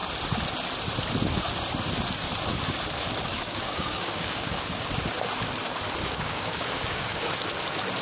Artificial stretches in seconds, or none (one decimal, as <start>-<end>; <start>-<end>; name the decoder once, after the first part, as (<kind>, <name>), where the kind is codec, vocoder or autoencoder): 3.3-4.9 (codec, DAC); 6.0-7.3